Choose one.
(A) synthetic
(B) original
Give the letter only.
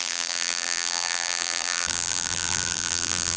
A